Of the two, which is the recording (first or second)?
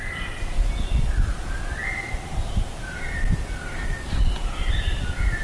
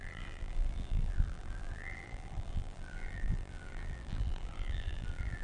first